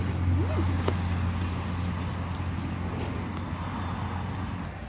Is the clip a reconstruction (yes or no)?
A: no